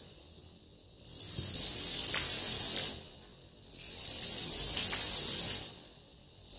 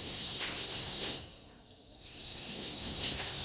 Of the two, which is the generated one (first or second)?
second